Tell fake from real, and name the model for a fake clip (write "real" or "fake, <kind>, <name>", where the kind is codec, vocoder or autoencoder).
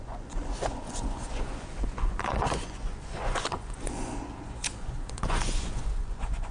fake, vocoder, Vocos